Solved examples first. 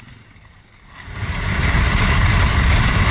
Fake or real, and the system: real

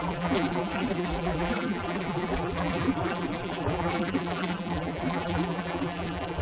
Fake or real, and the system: fake, vocoder, BigVGAN v2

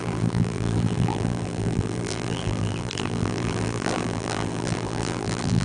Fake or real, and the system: fake, vocoder, BigVGAN v2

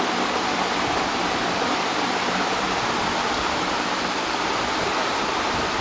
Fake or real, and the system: fake, vocoder, BigVGAN v2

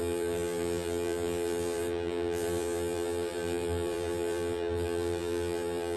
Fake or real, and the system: fake, vocoder, BigVGAN v2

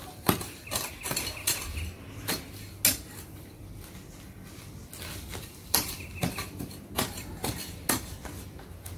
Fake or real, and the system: real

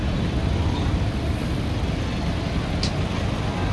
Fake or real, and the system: real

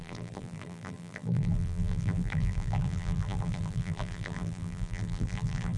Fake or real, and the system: fake, vocoder, BigVGAN v2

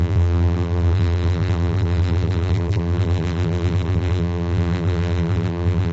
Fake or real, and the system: fake, vocoder, BigVGAN v2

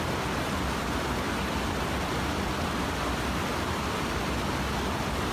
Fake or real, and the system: real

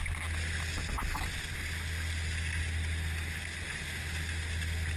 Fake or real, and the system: real